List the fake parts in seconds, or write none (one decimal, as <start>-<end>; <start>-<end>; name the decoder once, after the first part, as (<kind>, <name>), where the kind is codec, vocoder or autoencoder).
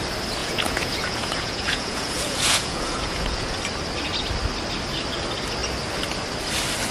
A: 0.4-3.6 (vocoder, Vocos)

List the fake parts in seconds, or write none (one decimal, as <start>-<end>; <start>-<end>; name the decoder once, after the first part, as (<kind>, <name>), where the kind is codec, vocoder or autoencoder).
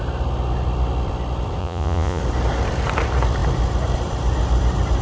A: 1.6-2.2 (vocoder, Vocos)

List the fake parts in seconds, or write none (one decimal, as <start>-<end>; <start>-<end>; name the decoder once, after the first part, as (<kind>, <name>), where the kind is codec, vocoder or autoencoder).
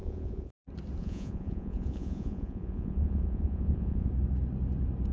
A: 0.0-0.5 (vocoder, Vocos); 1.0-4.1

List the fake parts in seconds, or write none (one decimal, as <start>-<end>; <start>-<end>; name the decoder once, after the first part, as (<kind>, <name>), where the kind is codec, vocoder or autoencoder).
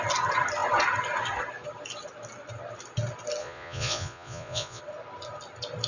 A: 3.4-4.8 (vocoder, Vocos)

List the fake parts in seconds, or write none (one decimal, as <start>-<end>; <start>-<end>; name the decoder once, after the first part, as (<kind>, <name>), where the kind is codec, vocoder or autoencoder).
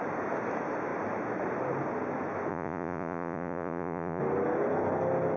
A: 2.5-4.2 (vocoder, Vocos)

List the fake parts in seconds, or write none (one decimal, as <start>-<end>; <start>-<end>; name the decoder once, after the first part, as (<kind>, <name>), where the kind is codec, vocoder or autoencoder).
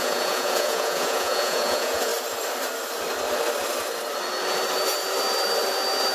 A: 0.0-2.1 (vocoder, Vocos)